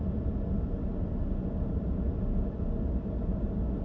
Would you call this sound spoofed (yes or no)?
no